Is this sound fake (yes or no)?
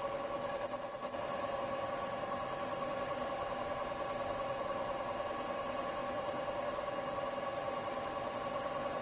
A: no